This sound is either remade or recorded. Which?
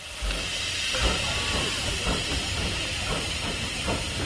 recorded